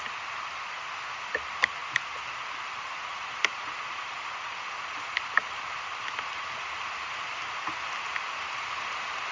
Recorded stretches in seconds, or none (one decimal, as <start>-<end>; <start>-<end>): 0.0-9.3